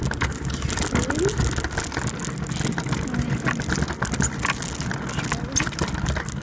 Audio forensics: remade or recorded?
recorded